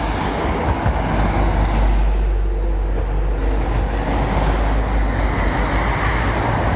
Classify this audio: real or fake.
real